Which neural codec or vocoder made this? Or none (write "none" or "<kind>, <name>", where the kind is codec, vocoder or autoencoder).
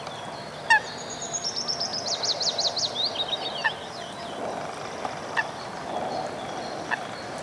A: none